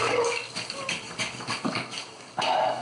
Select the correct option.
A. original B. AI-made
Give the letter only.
B